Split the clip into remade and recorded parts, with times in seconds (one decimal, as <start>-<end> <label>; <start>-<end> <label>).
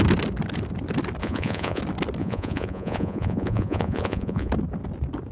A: 0.0-1.2 recorded; 1.2-1.8 remade; 1.8-2.2 recorded; 2.2-4.5 remade; 4.5-5.3 recorded